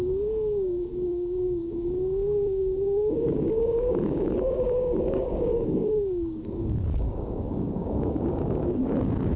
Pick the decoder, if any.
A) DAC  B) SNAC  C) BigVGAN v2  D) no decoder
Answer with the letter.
A